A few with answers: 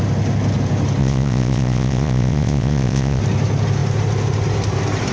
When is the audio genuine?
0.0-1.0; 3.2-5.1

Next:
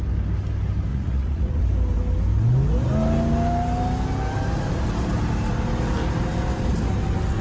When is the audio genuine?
0.0-0.9; 1.6-7.4

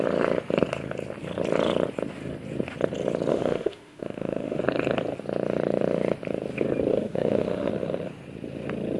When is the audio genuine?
0.0-3.3; 4.6-6.9; 7.7-9.0

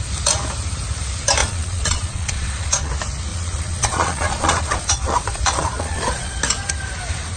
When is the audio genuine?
0.0-1.4; 2.9-3.3; 6.4-7.4